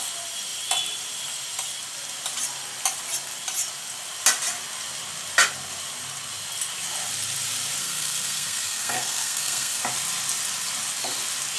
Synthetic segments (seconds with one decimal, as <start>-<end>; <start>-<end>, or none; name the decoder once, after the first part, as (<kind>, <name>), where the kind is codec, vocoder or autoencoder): 7.8-9.8 (codec, SNAC)